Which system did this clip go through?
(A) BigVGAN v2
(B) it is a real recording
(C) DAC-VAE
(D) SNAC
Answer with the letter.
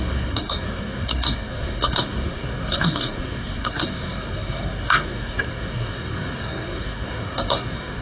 D